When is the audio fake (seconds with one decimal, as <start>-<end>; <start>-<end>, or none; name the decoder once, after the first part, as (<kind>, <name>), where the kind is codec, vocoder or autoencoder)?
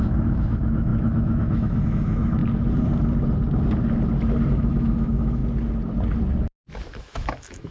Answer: 0.0-2.4 (autoencoder, DAC-VAE); 4.5-5.4; 7.0-7.7